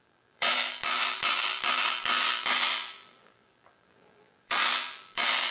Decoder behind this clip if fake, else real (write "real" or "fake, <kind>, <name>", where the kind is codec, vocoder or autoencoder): fake, vocoder, BigVGAN v2